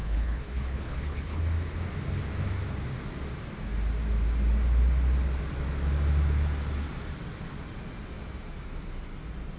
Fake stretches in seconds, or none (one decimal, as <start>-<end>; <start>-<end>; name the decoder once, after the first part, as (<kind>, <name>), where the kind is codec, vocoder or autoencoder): 0.0-1.4 (codec, HILCodec)